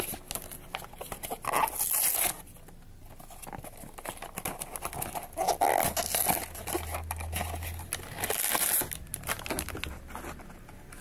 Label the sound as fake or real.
real